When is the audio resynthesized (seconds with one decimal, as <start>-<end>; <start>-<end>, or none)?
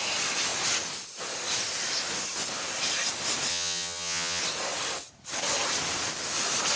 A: 3.5-4.4